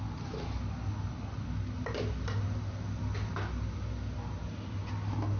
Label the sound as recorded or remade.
recorded